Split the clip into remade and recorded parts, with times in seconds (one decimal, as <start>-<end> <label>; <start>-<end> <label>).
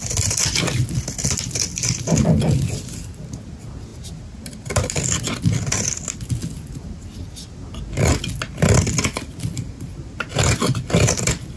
0.0-11.6 recorded